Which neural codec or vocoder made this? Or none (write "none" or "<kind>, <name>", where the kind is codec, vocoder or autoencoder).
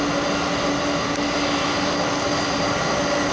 none